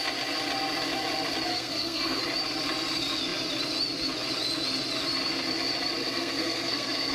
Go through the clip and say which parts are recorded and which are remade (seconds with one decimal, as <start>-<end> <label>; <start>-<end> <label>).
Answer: 0.0-1.5 recorded; 1.5-2.2 remade; 2.2-6.0 recorded; 6.0-7.1 remade